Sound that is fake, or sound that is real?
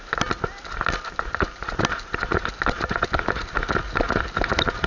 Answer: real